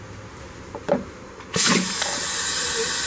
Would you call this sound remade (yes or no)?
no